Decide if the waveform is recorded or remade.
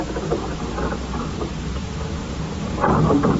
recorded